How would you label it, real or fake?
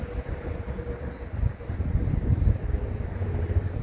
real